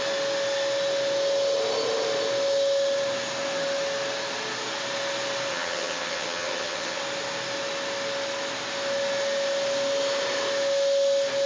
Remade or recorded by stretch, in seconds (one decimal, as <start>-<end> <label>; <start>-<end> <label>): 0.0-5.5 recorded; 5.5-7.0 remade; 7.0-11.5 recorded